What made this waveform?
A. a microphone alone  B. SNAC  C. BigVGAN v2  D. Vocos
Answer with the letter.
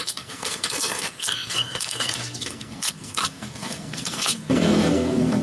B